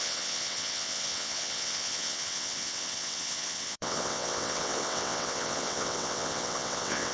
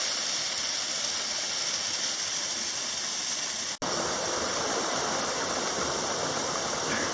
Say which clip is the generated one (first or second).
first